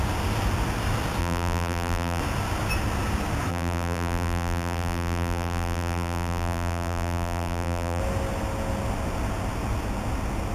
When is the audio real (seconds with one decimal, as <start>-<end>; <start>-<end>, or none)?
0.0-1.2; 2.2-3.5; 8.0-10.5